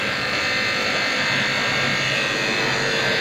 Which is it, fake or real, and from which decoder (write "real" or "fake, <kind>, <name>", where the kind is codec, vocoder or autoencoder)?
real